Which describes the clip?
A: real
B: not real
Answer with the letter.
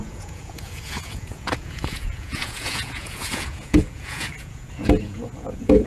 B